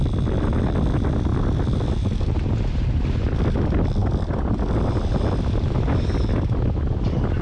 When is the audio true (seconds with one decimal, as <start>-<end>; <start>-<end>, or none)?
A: 0.0-7.4